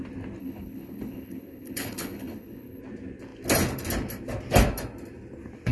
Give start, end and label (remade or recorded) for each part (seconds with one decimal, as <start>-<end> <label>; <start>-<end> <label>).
0.0-0.4 recorded; 0.4-2.8 remade; 2.8-5.7 recorded